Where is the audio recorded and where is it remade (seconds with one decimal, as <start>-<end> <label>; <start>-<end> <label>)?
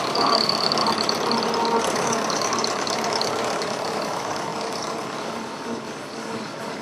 0.0-0.8 remade; 0.8-1.8 recorded; 1.8-6.8 remade